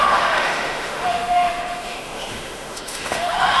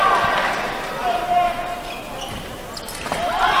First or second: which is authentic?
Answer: second